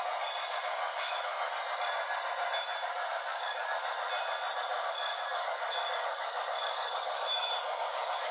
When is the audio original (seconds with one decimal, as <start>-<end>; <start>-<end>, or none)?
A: 0.0-0.8; 1.5-3.3; 3.8-5.1